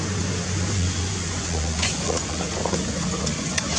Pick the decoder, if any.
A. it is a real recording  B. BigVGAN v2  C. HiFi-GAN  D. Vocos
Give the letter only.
D